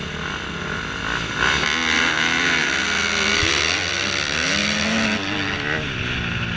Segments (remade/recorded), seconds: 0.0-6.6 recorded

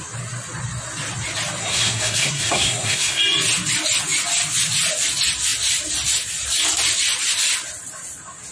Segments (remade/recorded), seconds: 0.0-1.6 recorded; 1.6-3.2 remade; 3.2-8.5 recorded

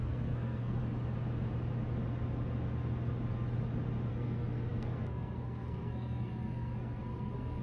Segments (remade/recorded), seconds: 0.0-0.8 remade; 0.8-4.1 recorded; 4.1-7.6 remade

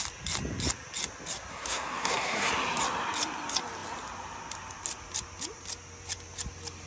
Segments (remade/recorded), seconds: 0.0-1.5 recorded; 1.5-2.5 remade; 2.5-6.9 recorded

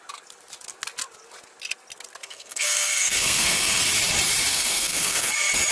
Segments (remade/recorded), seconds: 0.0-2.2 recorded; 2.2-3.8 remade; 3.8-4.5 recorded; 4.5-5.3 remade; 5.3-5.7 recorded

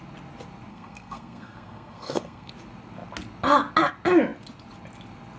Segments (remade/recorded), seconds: 0.0-0.7 recorded; 0.7-2.5 remade; 2.5-5.4 recorded